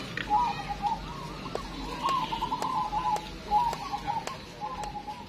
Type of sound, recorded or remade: recorded